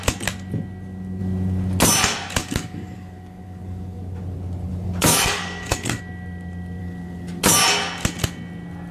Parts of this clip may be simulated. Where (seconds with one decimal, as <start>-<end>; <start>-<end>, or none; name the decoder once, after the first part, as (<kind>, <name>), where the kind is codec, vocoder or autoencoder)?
2.4-4.0 (codec, DAC); 4.7-6.0; 6.8-7.4